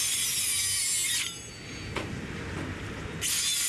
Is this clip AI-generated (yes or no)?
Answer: no